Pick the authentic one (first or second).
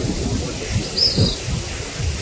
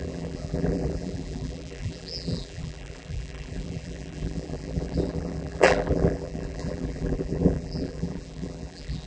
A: first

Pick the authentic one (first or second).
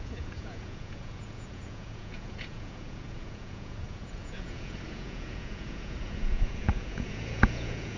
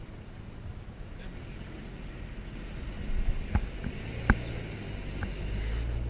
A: second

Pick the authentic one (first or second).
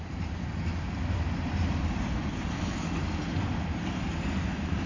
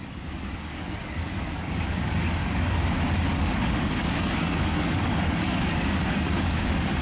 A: first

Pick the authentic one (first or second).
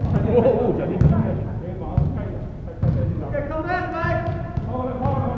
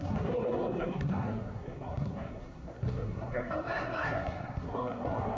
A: first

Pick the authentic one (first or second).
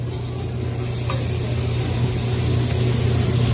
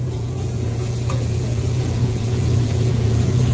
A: first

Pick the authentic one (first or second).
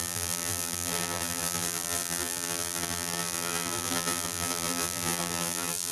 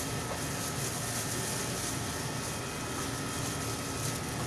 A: second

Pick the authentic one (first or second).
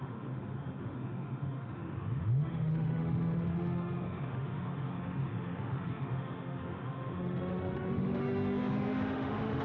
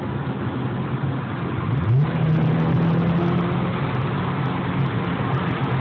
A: second